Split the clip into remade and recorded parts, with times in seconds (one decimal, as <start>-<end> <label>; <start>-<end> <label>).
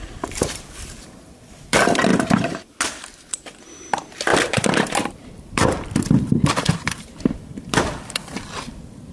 0.0-2.1 remade; 2.1-3.6 recorded; 3.6-9.1 remade